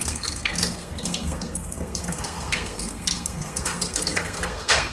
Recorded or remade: remade